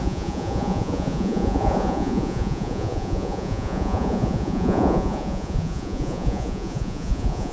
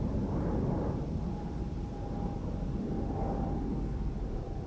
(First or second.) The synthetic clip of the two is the first